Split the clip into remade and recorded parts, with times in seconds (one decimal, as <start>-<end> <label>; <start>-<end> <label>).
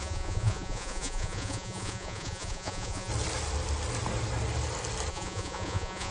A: 0.0-3.1 remade; 3.1-5.1 recorded; 5.1-6.1 remade